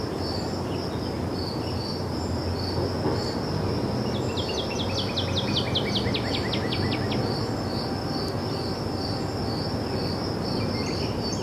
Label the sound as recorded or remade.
recorded